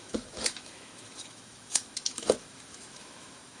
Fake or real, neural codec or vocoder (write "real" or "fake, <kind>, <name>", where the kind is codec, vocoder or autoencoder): fake, autoencoder, DAC-VAE